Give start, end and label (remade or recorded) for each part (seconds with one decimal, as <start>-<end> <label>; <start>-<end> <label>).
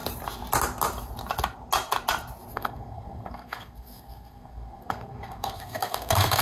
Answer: 0.0-2.5 recorded; 2.5-6.4 remade